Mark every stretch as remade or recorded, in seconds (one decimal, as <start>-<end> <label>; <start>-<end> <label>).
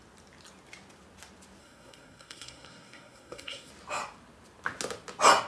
0.0-1.6 recorded; 1.6-3.7 remade; 3.7-5.5 recorded